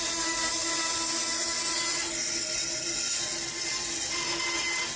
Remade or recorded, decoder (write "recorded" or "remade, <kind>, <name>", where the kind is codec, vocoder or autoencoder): recorded